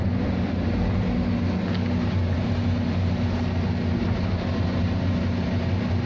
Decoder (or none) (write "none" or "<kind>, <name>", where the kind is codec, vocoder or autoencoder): none